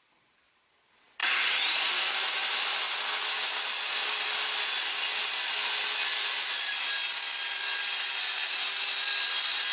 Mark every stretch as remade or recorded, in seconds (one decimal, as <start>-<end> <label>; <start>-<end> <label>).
0.0-1.2 recorded; 1.2-1.9 remade; 1.9-6.1 recorded; 6.1-7.1 remade; 7.1-9.7 recorded